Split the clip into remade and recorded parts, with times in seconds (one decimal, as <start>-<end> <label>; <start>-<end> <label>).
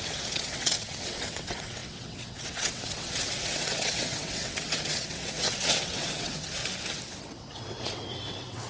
0.0-6.6 remade; 6.6-7.2 recorded; 7.2-8.7 remade